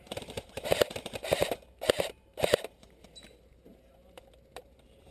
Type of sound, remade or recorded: remade